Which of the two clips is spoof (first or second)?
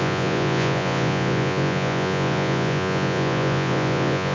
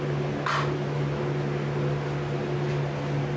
first